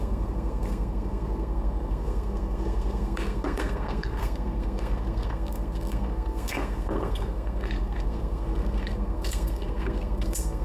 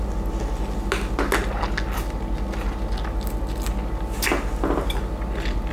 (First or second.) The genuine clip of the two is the second